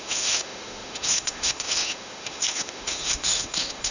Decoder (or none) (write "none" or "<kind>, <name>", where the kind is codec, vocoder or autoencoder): autoencoder, DAC-VAE